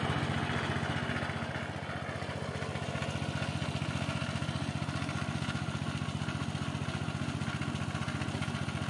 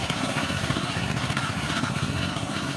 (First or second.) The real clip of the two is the first